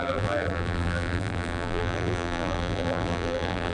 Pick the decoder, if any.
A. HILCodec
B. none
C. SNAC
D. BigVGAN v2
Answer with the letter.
D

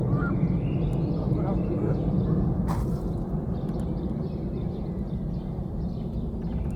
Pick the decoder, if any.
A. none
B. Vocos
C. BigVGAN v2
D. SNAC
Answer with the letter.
A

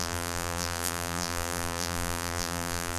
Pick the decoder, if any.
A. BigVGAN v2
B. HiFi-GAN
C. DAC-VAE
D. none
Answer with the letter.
A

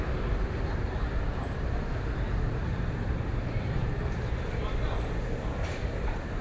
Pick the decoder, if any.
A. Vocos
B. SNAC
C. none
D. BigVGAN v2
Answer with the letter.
D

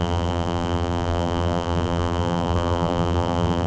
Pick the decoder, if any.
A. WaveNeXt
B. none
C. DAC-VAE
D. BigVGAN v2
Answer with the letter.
D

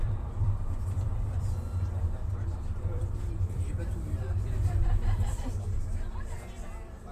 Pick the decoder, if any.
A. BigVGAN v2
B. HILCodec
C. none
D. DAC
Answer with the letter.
A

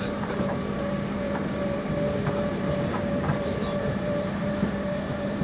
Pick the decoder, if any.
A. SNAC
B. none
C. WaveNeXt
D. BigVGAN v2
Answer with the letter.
D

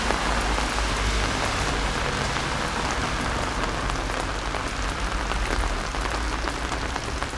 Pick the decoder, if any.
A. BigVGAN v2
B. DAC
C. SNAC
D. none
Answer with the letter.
D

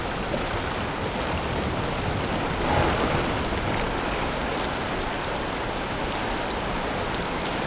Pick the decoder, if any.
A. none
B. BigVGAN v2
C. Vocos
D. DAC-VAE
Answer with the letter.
A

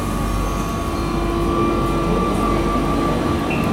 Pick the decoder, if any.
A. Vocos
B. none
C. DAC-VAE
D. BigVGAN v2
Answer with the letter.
B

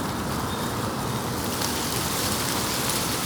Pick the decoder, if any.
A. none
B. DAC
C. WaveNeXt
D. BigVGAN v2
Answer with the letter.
A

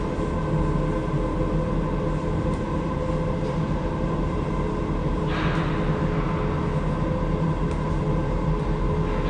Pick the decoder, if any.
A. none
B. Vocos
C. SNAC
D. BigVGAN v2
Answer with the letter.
A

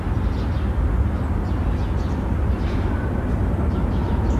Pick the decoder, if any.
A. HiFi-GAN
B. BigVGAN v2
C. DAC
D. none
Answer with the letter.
D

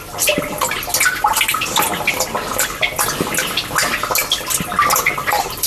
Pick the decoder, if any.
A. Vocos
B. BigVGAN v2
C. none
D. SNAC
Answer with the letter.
C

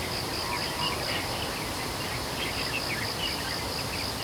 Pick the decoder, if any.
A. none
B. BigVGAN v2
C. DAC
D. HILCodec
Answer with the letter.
A